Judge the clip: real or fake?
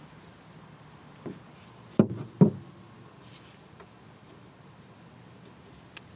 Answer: real